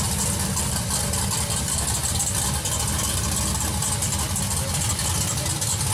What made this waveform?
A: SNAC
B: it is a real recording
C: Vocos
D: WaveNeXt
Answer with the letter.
B